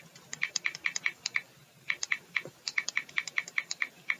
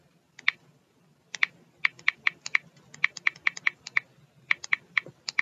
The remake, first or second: first